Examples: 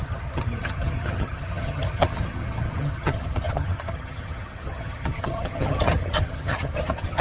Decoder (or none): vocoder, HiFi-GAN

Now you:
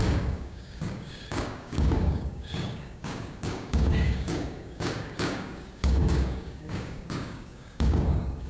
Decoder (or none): codec, DAC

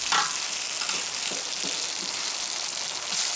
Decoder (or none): none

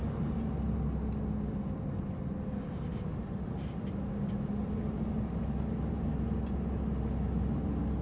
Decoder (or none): none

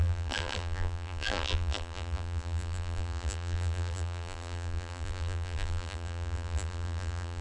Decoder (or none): vocoder, BigVGAN v2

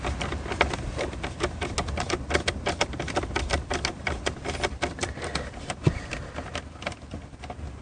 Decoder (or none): none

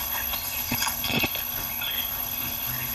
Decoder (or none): codec, HILCodec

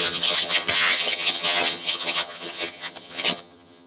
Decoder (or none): vocoder, HiFi-GAN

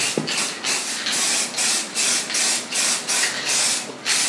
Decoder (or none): none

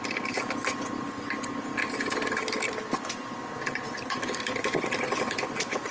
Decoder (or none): none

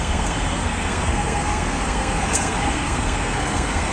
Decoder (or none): codec, SNAC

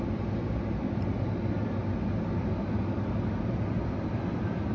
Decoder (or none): none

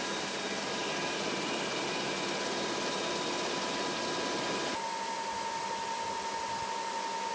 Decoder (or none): none